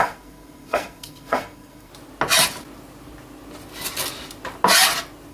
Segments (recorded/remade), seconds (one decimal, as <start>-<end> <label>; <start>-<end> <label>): 0.0-1.9 remade; 1.9-5.3 recorded